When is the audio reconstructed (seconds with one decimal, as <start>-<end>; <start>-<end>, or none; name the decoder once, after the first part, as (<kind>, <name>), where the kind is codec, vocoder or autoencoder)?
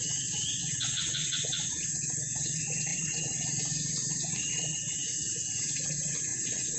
0.0-6.8 (vocoder, WaveNeXt)